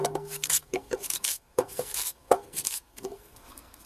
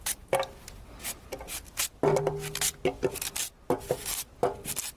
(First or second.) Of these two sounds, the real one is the second